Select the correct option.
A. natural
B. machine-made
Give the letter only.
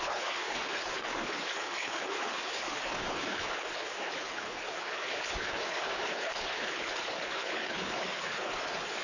B